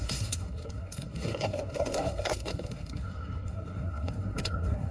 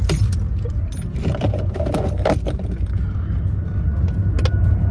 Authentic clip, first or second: second